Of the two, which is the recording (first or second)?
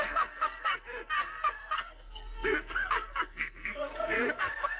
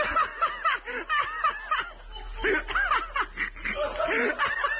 second